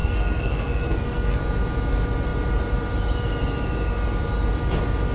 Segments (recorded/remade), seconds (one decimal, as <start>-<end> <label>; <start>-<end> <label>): 0.0-1.4 remade; 1.4-5.1 recorded